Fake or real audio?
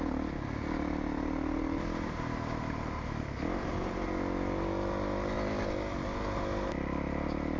real